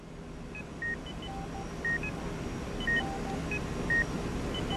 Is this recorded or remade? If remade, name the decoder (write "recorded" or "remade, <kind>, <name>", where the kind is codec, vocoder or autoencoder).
recorded